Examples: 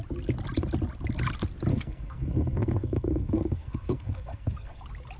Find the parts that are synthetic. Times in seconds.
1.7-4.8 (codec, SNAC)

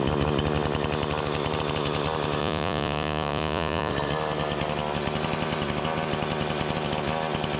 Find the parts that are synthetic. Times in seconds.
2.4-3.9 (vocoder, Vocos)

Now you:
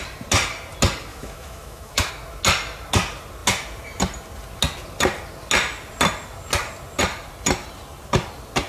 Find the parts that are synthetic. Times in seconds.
1.1-2.1 (autoencoder, DAC-VAE)